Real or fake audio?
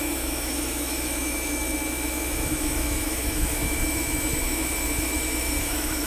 fake